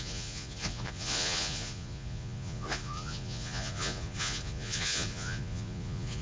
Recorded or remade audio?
remade